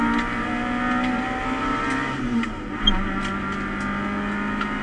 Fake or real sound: real